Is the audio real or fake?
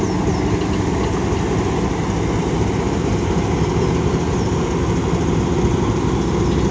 real